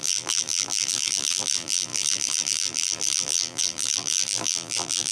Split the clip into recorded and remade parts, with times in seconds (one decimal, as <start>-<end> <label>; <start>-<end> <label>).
0.0-5.1 remade

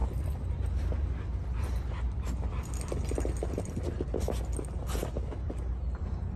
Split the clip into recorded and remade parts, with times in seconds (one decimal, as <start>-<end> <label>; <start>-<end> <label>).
0.0-3.8 remade; 3.8-6.4 recorded

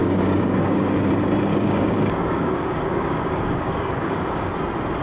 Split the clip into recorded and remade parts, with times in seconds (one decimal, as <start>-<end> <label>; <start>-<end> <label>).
0.0-1.1 remade; 1.1-1.5 recorded; 1.5-4.5 remade; 4.5-5.0 recorded

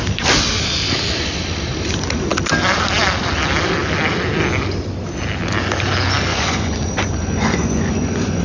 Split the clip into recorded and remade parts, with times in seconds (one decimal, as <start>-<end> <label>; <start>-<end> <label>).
0.0-6.3 recorded; 6.3-8.4 remade

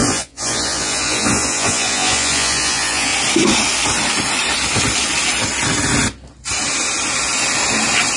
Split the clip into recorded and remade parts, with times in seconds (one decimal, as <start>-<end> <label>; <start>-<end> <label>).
0.0-3.1 remade; 3.1-8.2 recorded